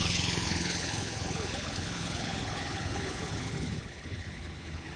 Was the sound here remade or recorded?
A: remade